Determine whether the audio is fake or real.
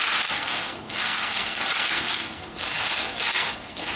fake